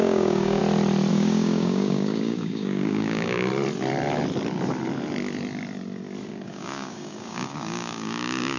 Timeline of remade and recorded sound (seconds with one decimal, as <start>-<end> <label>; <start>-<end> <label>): 0.0-0.6 remade; 0.6-1.1 recorded; 1.1-3.5 remade; 3.5-6.3 recorded; 6.3-8.6 remade